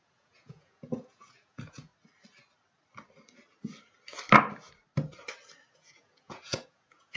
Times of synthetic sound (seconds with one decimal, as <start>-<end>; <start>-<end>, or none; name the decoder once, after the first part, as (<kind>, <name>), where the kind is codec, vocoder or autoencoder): 0.0-1.9 (vocoder, Vocos); 5.7-7.2